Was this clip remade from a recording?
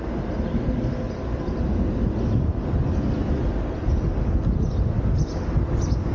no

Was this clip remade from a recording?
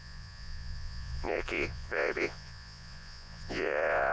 yes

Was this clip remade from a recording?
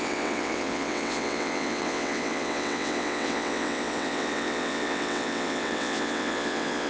yes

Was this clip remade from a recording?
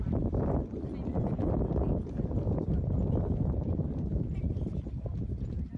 no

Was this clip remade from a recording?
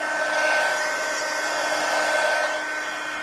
no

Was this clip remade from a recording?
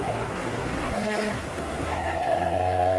yes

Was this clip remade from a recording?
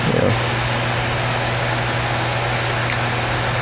no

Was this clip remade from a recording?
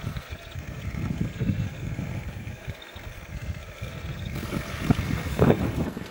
yes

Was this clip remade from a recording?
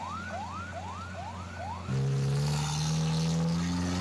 no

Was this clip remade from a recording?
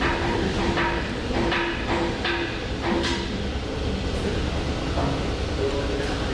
no